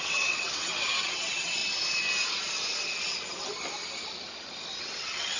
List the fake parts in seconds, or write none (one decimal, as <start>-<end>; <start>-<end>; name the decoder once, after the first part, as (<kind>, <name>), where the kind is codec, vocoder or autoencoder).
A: 0.0-1.6 (vocoder, WaveNeXt); 4.8-5.4